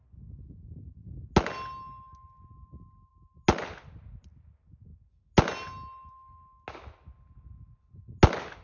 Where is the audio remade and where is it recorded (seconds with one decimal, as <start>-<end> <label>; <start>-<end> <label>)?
0.0-8.6 recorded